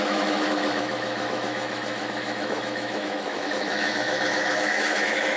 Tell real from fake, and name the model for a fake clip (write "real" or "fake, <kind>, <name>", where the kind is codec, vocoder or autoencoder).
fake, autoencoder, DAC-VAE